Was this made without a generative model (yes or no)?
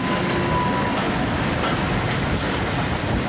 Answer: yes